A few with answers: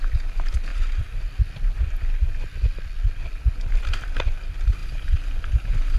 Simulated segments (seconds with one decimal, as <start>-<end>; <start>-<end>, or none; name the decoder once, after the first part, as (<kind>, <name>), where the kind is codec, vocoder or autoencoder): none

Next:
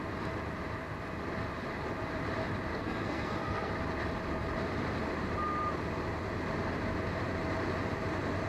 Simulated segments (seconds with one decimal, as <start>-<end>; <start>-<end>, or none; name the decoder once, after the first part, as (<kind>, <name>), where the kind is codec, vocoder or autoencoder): 2.7-3.7 (codec, SNAC)

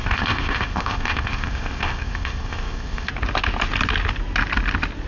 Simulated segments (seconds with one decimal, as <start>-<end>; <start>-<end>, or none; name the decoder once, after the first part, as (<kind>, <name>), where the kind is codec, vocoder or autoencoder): 0.0-3.1 (codec, ZipCodec)

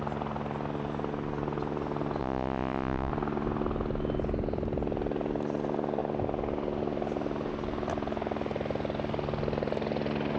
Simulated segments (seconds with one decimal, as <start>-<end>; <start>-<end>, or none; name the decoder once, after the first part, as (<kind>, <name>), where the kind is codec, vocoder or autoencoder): 2.2-3.1 (vocoder, Vocos)

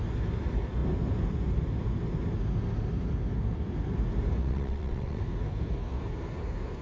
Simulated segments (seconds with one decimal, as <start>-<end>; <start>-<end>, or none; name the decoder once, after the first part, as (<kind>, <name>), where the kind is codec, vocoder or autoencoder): 4.4-5.2 (vocoder, WaveNeXt)

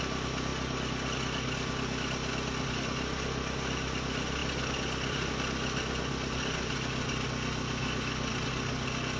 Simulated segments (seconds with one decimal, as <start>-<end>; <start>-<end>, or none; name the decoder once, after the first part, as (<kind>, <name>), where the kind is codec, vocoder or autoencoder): none